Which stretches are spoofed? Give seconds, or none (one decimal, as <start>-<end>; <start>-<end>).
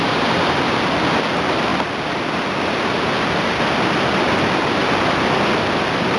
none